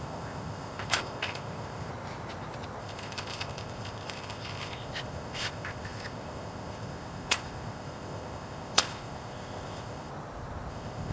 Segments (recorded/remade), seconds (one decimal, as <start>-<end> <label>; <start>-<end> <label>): 0.0-1.9 remade; 1.9-2.8 recorded; 2.8-10.1 remade; 10.1-10.7 recorded; 10.7-11.1 remade